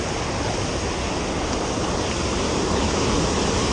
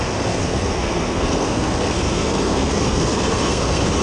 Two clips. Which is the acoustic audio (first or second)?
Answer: first